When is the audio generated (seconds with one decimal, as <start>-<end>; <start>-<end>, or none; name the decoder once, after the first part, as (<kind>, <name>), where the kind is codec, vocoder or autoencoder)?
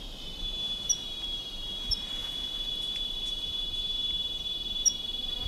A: 2.2-3.6 (vocoder, Vocos)